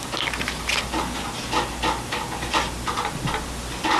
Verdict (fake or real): real